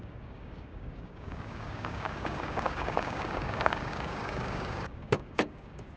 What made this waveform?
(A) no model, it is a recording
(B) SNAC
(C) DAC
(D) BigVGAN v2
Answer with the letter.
C